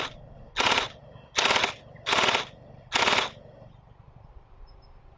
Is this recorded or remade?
recorded